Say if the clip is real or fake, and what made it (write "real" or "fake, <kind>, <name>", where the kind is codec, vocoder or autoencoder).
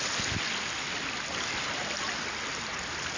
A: real